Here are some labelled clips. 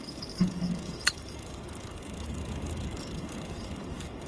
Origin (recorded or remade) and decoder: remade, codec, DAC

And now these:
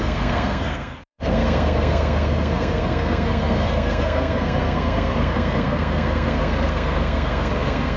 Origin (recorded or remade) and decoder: remade, codec, SNAC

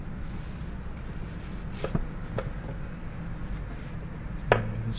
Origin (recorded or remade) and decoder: recorded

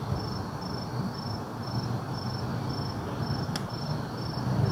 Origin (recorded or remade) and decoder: recorded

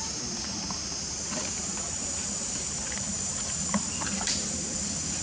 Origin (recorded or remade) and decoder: remade, vocoder, BigVGAN v2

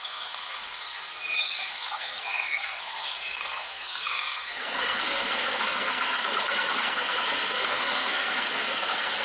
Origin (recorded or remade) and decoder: remade, codec, SNAC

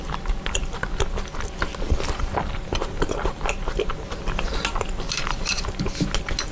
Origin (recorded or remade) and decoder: recorded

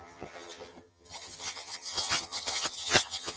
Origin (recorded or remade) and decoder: remade, vocoder, HiFi-GAN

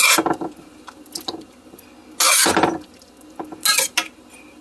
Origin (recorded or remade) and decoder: recorded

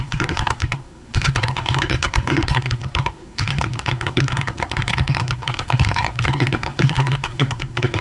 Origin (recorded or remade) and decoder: remade, codec, SNAC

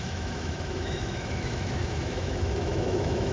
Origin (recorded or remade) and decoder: remade, autoencoder, DAC-VAE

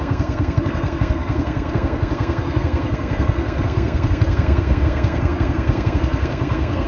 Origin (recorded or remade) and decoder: remade, codec, SNAC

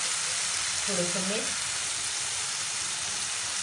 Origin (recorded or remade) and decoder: recorded